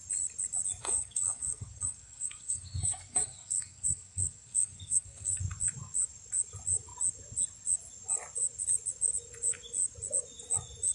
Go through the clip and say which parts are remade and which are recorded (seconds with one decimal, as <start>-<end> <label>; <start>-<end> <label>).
0.0-0.8 recorded; 0.8-5.4 remade; 5.4-10.9 recorded